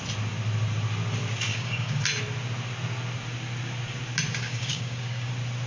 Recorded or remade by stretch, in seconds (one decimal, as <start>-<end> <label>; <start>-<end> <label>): 0.0-1.5 recorded; 1.5-2.0 remade; 2.0-4.3 recorded; 4.3-5.3 remade; 5.3-5.7 recorded